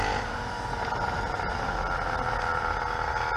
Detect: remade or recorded recorded